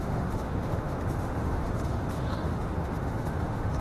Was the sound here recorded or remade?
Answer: remade